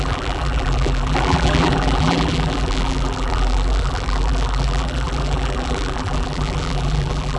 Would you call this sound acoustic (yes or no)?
no